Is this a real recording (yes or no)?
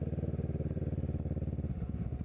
yes